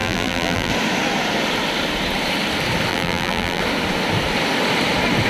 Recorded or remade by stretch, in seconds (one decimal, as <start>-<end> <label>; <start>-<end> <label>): 0.0-0.7 remade; 0.7-2.9 recorded; 2.9-3.6 remade; 3.6-5.3 recorded